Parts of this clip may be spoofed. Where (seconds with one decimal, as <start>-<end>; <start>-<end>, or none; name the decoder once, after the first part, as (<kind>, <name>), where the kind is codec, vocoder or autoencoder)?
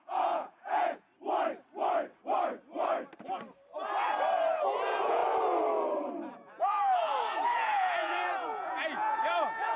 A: 0.0-1.1 (vocoder, Vocos); 4.5-5.2; 6.3-9.8